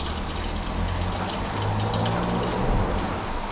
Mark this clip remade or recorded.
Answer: recorded